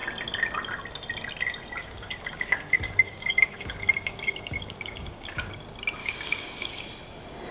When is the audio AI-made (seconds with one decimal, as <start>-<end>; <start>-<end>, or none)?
1.8-5.5; 6.0-6.8

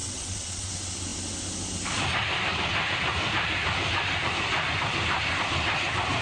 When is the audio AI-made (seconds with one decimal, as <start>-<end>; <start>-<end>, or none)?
0.0-0.7

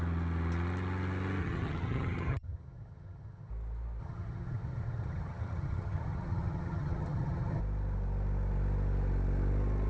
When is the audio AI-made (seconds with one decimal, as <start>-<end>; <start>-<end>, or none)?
1.4-3.5; 4.0-7.6

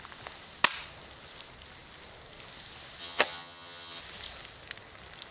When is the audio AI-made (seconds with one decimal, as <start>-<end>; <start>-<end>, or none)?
3.0-4.0